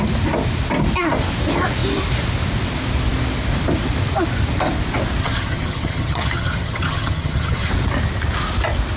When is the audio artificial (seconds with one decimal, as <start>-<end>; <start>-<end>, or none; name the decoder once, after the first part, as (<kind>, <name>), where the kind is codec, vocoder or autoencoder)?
5.2-7.7 (vocoder, HiFi-GAN)